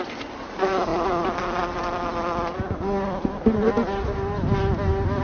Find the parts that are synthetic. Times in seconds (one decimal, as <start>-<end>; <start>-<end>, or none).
none